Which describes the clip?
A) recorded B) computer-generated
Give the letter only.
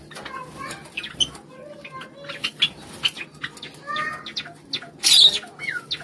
A